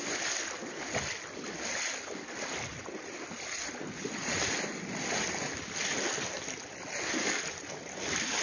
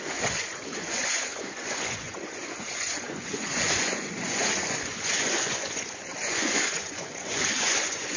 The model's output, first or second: second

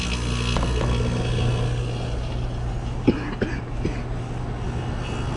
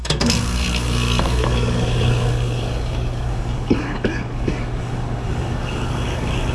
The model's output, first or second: second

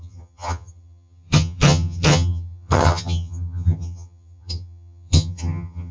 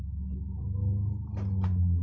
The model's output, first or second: first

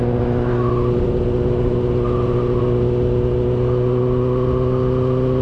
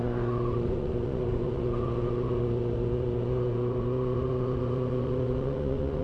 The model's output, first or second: second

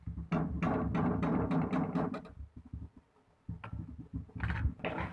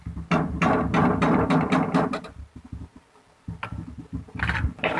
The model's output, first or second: second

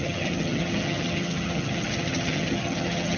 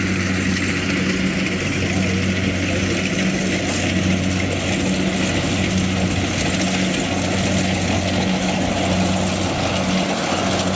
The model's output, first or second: first